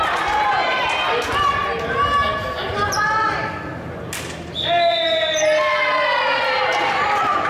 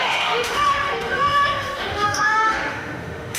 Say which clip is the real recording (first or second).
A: first